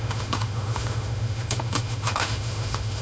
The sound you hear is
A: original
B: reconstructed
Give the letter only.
B